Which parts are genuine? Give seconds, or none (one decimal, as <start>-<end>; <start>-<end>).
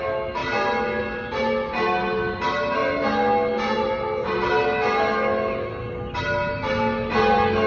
0.0-7.7